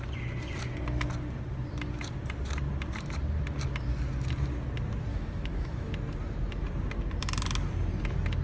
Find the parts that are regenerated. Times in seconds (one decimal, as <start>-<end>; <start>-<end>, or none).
5.1-5.9